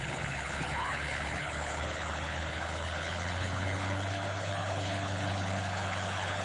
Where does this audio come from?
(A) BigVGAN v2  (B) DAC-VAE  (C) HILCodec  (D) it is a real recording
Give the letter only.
C